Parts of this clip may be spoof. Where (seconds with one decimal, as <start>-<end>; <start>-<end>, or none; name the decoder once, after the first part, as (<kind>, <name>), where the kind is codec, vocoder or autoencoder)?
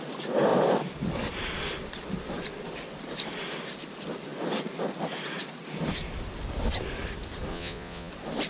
7.5-8.1 (vocoder, Vocos)